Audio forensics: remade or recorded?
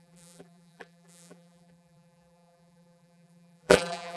remade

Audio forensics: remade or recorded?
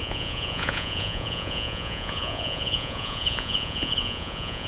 remade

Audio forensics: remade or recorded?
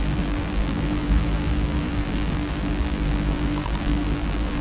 remade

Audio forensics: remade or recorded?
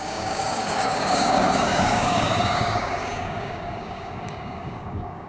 remade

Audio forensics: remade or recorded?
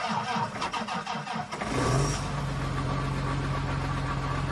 recorded